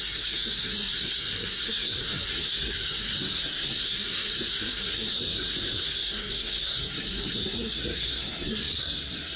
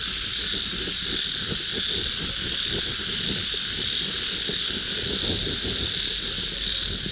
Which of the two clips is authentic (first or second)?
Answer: second